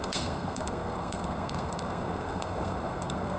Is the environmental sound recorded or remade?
remade